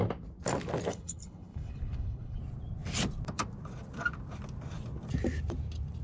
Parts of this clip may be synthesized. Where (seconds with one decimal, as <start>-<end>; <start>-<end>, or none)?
0.9-2.4